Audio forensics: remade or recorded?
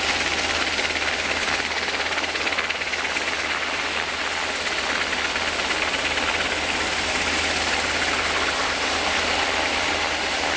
recorded